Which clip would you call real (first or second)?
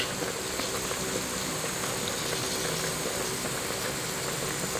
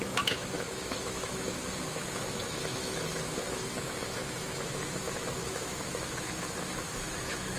first